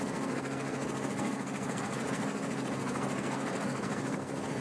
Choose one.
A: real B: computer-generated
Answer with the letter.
B